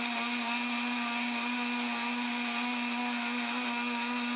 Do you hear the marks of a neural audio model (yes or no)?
no